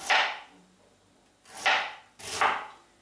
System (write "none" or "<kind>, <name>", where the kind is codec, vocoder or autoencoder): none